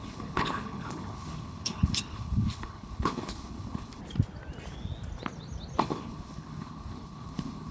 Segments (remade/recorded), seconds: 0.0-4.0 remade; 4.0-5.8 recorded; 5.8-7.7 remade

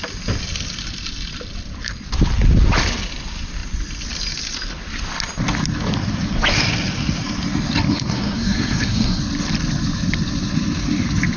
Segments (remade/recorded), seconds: 0.0-7.9 recorded; 7.9-9.2 remade; 9.2-11.4 recorded

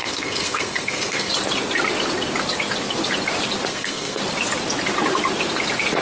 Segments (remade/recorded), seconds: 0.0-1.3 remade; 1.3-3.7 recorded; 3.7-4.2 remade; 4.2-6.0 recorded

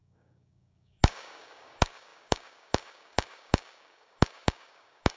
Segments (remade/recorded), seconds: 0.0-5.2 remade

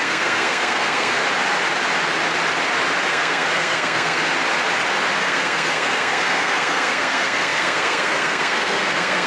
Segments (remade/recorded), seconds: 0.0-1.2 remade; 1.2-3.1 recorded; 3.1-4.2 remade; 4.2-5.2 recorded; 5.2-9.3 remade

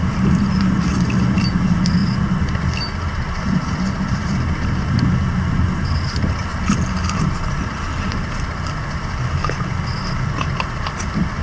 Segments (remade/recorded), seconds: 0.0-11.4 recorded

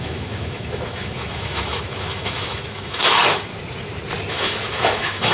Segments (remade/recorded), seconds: 0.0-3.5 remade; 3.5-4.3 recorded; 4.3-5.3 remade

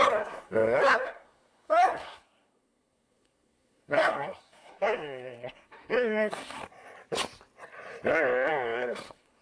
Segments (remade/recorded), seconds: 0.0-6.6 remade; 6.6-8.5 recorded; 8.5-9.4 remade